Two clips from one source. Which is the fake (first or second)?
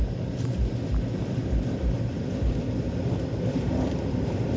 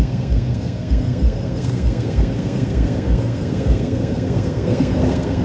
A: second